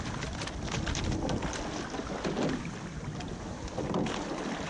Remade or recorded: recorded